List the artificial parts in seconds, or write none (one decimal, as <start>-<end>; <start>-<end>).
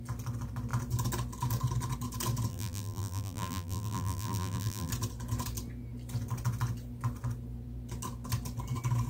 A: 2.5-4.9